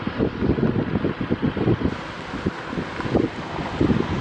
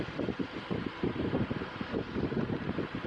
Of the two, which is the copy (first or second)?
second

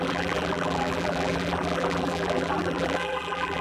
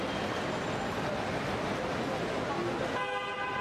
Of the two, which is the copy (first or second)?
first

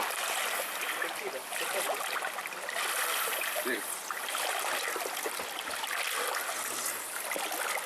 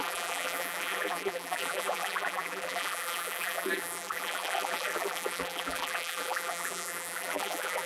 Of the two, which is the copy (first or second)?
second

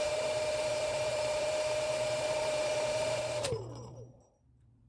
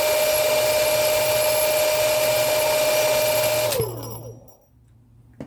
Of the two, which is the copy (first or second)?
first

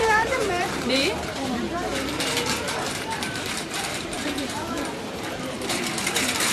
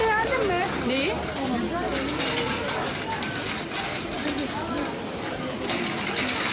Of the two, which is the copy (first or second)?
first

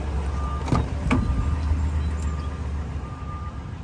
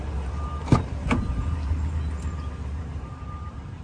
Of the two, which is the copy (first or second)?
second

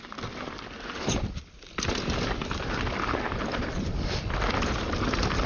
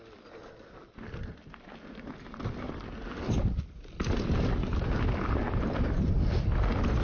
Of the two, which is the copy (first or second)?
first